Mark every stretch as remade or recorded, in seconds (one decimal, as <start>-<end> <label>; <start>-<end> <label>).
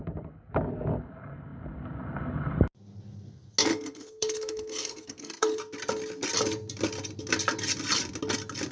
0.0-3.7 recorded; 3.7-5.6 remade; 5.6-8.7 recorded